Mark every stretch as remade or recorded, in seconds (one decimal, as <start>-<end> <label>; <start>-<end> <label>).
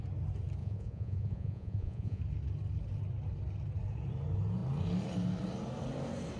0.0-0.6 recorded; 0.6-2.2 remade; 2.2-6.4 recorded